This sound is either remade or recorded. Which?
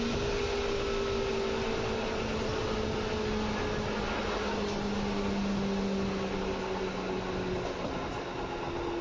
recorded